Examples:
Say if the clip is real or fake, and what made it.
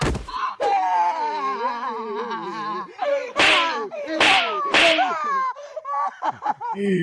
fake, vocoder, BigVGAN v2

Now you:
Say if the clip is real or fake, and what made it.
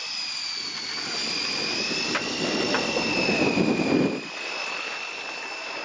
fake, vocoder, BigVGAN v2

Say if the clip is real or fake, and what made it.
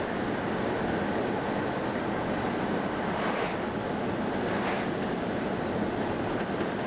real